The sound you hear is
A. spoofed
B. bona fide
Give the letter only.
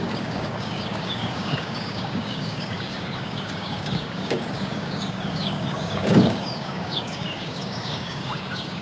A